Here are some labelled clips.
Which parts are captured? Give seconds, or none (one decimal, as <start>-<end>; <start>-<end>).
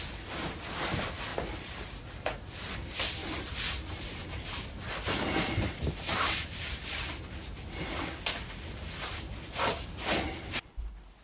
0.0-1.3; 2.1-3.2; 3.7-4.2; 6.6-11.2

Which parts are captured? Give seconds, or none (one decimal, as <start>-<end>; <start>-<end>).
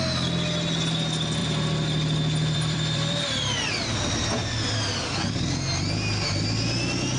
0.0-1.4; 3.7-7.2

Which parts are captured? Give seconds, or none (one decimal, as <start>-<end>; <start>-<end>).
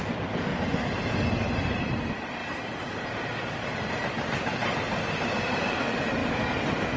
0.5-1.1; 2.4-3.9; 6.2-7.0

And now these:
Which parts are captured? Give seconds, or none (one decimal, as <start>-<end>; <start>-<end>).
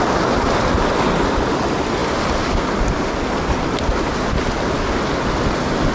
0.0-5.9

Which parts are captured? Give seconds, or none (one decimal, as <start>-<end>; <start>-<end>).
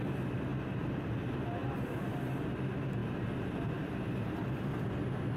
0.0-0.5; 1.1-1.6; 2.2-3.0; 5.0-5.4